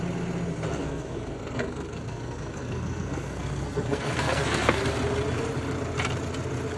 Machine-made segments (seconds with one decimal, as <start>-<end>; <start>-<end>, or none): 0.8-4.8